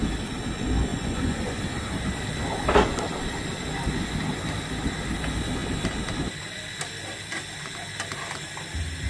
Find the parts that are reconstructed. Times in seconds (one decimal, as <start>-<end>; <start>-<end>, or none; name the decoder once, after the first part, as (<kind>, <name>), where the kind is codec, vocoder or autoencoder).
0.9-1.6 (vocoder, Vocos)